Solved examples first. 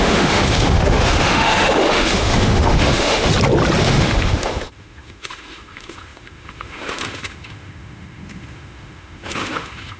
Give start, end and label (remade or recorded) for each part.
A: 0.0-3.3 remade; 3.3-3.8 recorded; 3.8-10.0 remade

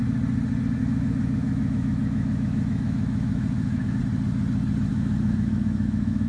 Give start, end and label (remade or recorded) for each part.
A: 0.0-0.8 recorded; 0.8-4.0 remade; 4.0-4.9 recorded; 4.9-6.3 remade

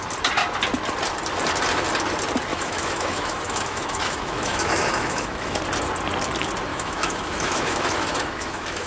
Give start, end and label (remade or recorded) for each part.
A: 0.0-2.5 recorded; 2.5-5.6 remade; 5.6-6.7 recorded; 6.7-8.9 remade

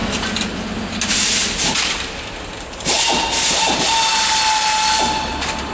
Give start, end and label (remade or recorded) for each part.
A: 0.0-5.7 recorded

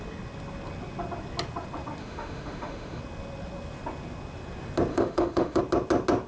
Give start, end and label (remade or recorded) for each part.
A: 0.0-2.0 recorded; 2.0-3.0 remade; 3.0-4.9 recorded; 4.9-5.6 remade; 5.6-6.3 recorded